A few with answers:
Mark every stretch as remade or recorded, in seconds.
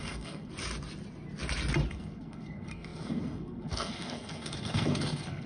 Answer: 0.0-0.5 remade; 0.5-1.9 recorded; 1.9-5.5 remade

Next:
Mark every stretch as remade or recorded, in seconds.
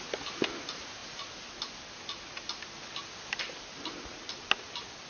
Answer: 0.0-5.1 recorded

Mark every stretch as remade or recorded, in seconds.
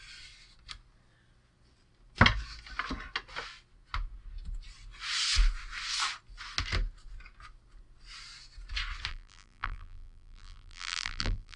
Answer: 0.0-9.1 recorded; 9.1-11.6 remade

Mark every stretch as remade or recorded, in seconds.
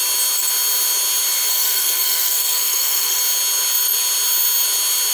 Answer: 0.0-1.5 recorded; 1.5-3.2 remade; 3.2-5.1 recorded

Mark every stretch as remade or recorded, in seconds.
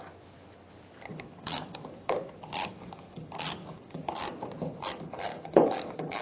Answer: 0.0-1.1 recorded; 1.1-4.2 remade; 4.2-5.3 recorded; 5.3-6.2 remade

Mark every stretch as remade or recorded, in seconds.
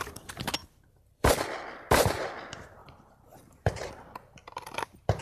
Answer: 0.0-0.6 recorded; 0.6-1.3 remade; 1.3-2.8 recorded; 2.8-3.9 remade; 3.9-4.4 recorded; 4.4-5.2 remade